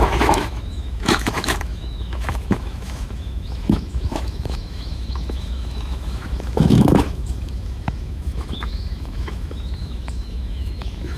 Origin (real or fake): fake